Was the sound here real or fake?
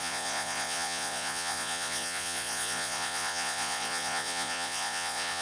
fake